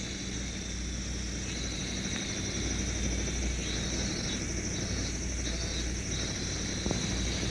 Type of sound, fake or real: real